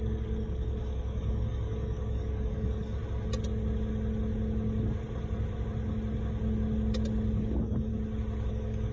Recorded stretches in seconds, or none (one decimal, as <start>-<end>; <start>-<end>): 3.0-7.4; 7.9-8.5